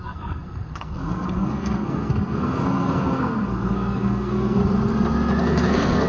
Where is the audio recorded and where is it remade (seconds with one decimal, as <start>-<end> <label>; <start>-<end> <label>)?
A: 0.0-4.6 remade; 4.6-5.4 recorded; 5.4-6.1 remade